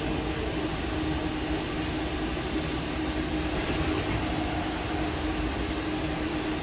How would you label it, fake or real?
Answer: real